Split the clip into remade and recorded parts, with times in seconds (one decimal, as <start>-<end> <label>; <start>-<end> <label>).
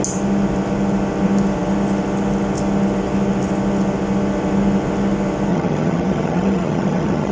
0.0-5.5 recorded; 5.5-7.3 remade